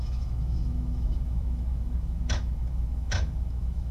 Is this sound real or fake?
fake